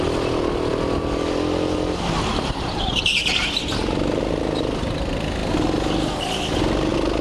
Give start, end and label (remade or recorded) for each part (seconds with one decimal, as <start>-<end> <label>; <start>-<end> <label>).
0.0-2.3 recorded; 2.3-3.0 remade; 3.0-7.2 recorded